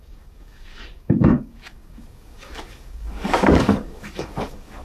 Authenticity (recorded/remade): remade